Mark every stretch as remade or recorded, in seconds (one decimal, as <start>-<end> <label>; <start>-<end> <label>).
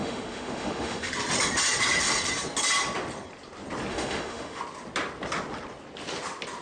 0.0-1.1 remade; 1.1-3.9 recorded; 3.9-4.6 remade; 4.6-6.6 recorded